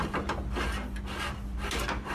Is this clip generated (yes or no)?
no